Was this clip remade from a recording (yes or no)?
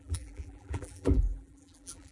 yes